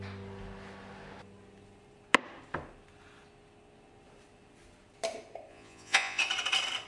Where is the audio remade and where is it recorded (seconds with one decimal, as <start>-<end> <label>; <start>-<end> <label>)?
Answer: 0.0-5.5 recorded; 5.5-6.2 remade; 6.2-6.9 recorded